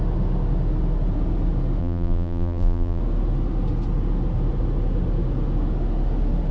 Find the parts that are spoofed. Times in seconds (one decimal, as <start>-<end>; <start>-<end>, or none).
1.8-3.0